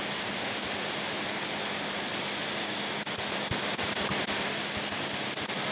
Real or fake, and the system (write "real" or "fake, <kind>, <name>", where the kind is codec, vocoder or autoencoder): real